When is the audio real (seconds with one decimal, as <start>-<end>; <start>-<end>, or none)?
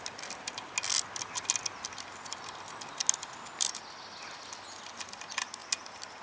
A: 0.0-6.2